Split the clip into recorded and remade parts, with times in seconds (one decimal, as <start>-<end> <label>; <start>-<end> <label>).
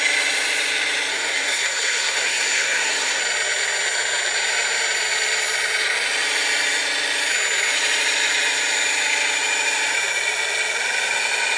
0.0-1.1 recorded; 1.1-3.2 remade; 3.2-11.6 recorded